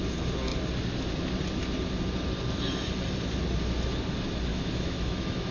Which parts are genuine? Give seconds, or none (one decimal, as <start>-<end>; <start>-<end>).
0.0-4.5